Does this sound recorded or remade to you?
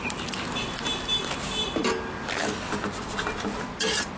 recorded